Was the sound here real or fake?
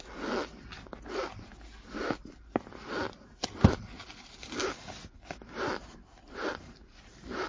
real